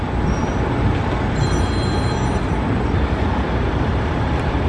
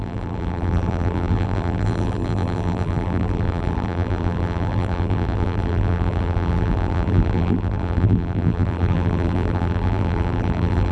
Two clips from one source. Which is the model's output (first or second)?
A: second